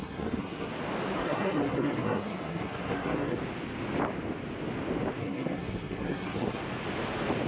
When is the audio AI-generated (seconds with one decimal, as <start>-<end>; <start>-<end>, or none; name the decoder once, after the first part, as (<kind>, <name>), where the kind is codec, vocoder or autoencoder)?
0.0-0.7 (codec, SNAC); 1.1-3.4; 5.2-6.6